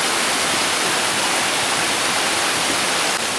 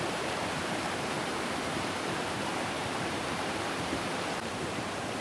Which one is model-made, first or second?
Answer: second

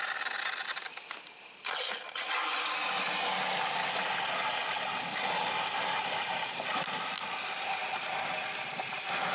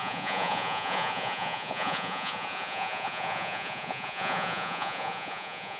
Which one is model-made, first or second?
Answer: second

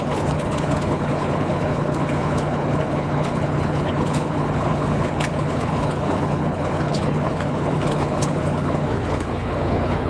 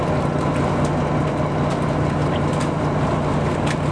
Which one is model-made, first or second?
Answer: first